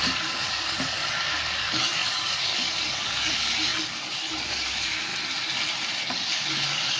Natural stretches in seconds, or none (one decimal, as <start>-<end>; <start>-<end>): 5.1-6.0